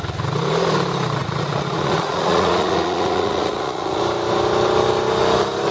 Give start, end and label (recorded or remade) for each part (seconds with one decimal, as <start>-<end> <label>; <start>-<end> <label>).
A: 0.0-1.2 recorded; 1.2-4.0 remade; 4.0-5.7 recorded